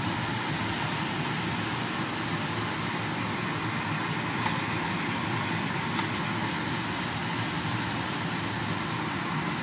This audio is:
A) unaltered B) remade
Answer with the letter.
A